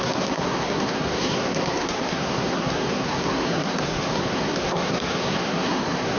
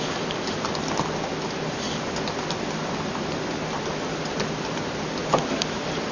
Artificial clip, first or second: first